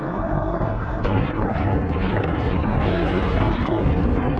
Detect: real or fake fake